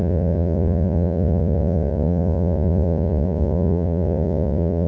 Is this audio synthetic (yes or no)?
yes